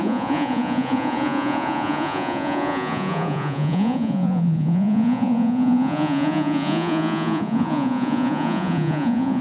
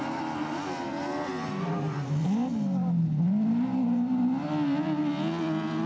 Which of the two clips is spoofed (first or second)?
first